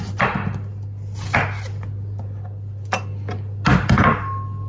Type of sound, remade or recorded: recorded